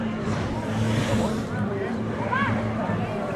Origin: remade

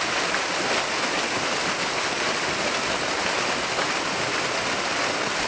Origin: recorded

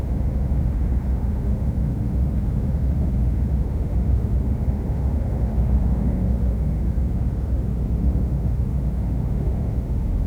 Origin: remade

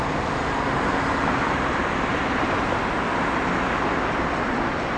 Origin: recorded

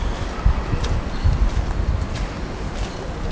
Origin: recorded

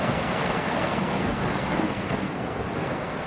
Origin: remade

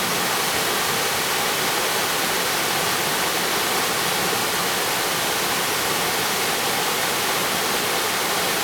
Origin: recorded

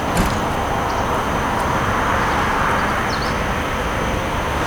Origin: recorded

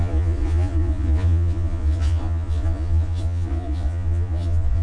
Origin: remade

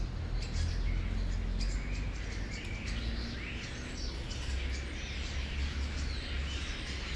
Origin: recorded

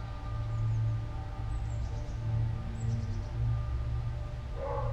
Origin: recorded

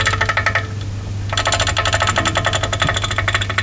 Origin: recorded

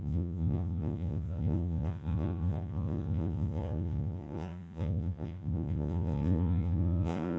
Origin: remade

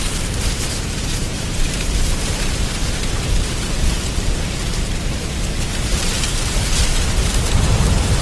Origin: remade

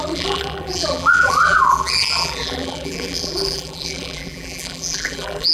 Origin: remade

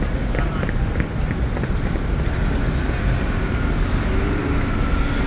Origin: recorded